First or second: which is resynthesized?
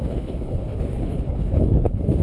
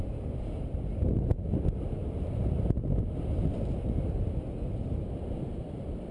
first